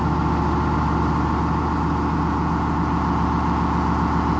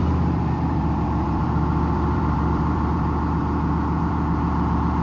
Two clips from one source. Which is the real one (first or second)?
first